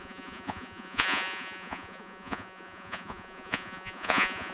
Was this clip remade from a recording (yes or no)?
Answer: yes